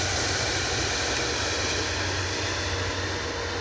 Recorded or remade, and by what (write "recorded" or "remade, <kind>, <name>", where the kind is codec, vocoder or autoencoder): recorded